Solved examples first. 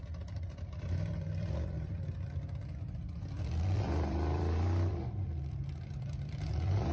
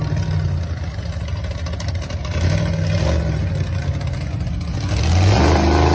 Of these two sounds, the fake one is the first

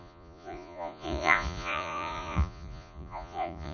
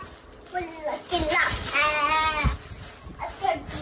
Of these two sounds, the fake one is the first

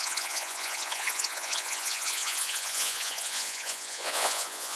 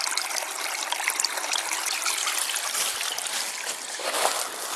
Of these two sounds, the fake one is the first